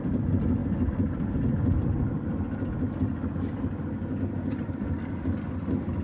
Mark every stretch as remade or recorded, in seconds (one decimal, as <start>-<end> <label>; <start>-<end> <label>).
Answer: 0.0-6.0 recorded